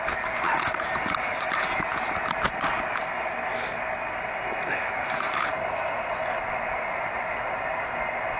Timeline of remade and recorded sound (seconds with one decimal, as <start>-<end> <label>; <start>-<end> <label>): 0.0-8.4 recorded